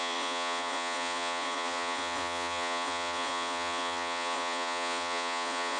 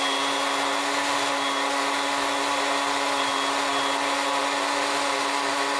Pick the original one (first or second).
second